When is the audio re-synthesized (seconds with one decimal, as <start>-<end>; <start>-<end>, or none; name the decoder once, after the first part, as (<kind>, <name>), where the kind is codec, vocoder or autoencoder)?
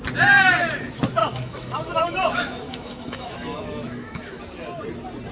1.2-4.4 (autoencoder, DAC-VAE)